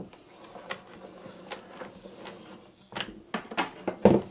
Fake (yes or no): no